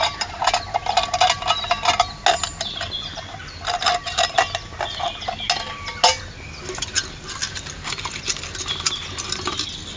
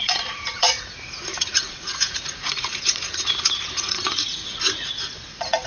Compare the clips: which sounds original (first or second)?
first